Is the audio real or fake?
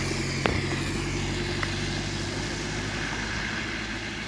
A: real